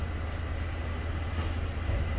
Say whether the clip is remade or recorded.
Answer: recorded